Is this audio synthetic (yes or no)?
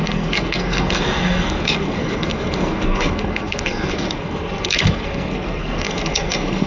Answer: yes